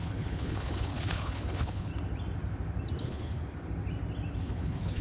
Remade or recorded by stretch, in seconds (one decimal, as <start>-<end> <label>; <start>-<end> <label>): 0.0-1.9 remade; 1.9-3.0 recorded; 3.0-3.4 remade; 3.4-4.4 recorded; 4.4-5.0 remade